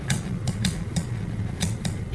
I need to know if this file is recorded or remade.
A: remade